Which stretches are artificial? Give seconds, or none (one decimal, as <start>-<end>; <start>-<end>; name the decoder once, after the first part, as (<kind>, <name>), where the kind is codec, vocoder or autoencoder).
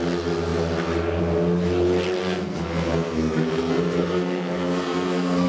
2.2-5.5 (codec, SNAC)